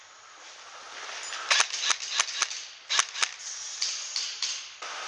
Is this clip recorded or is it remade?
recorded